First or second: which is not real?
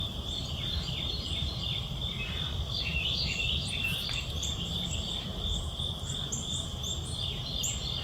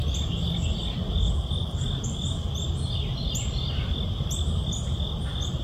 first